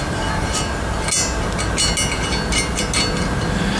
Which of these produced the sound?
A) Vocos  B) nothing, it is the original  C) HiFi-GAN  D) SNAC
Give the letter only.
B